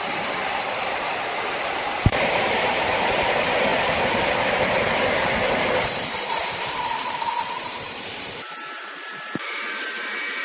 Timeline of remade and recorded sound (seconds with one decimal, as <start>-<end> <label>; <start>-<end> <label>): 0.0-3.7 remade; 3.7-5.3 recorded; 5.3-10.4 remade